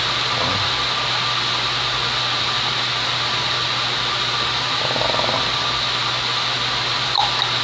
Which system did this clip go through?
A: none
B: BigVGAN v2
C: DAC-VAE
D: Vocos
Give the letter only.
A